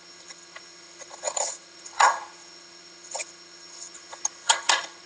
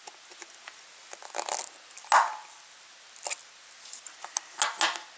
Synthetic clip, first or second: first